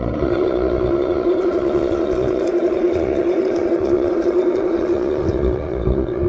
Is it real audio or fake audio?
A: fake